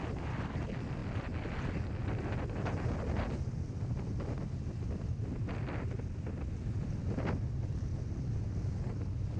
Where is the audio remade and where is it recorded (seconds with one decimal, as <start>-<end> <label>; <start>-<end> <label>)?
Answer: 0.0-9.4 recorded